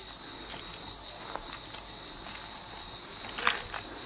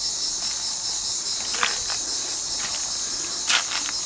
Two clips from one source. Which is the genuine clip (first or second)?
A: first